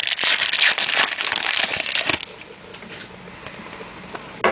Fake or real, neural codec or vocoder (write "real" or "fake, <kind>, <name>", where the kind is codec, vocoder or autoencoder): real